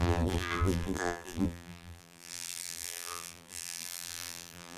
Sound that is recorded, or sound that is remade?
remade